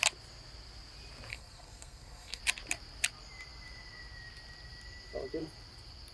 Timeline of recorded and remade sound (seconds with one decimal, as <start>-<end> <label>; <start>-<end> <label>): 0.0-1.3 recorded; 1.3-2.4 remade; 2.4-6.1 recorded

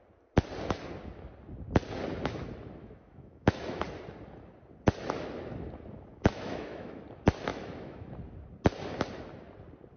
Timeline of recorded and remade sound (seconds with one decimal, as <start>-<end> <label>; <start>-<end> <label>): 0.0-2.8 recorded; 2.8-3.8 remade; 3.8-6.1 recorded; 6.1-7.0 remade; 7.0-7.5 recorded; 7.5-8.1 remade; 8.1-10.0 recorded

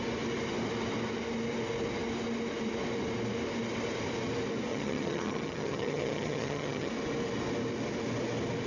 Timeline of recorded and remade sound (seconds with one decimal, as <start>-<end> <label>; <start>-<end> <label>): 0.0-4.7 recorded; 4.7-6.9 remade; 6.9-8.7 recorded

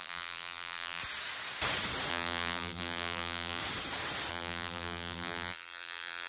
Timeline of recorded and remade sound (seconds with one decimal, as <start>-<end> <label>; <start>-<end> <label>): 0.0-1.0 remade; 1.0-2.1 recorded; 2.1-3.6 remade; 3.6-4.3 recorded; 4.3-6.3 remade